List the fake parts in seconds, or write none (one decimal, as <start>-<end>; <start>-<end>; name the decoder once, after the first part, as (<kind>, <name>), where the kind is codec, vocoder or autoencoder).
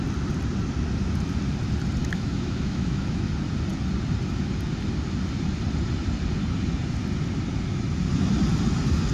2.0-3.3 (autoencoder, DAC-VAE)